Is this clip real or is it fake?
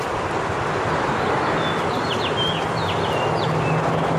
real